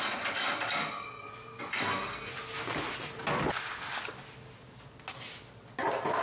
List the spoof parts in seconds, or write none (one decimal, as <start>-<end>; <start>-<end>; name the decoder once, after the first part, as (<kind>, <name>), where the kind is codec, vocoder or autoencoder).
1.7-2.3 (codec, SNAC)